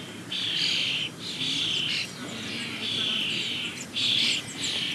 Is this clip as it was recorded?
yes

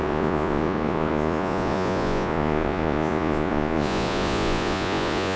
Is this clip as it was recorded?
no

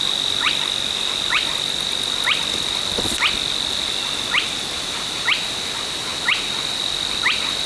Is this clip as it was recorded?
yes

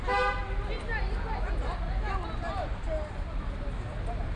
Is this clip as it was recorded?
yes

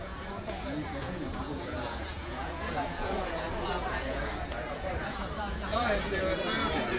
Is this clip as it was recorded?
no